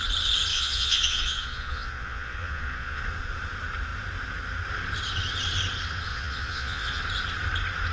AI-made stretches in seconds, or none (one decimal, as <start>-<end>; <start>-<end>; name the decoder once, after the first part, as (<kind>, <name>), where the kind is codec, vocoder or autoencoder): 0.5-3.0 (vocoder, Vocos); 6.1-7.0